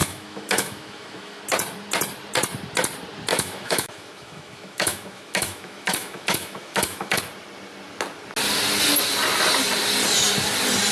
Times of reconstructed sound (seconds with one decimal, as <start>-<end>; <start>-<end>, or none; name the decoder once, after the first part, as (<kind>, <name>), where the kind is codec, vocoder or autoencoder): 0.0-1.4 (autoencoder, DAC-VAE); 3.3-7.2